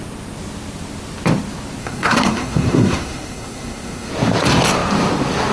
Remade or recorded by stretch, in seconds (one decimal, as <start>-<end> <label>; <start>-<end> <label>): 0.0-1.8 recorded; 1.8-4.1 remade; 4.1-5.5 recorded

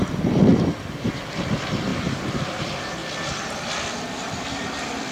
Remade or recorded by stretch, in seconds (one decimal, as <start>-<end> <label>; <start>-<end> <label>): 0.0-1.9 recorded; 1.9-2.6 remade; 2.6-5.1 recorded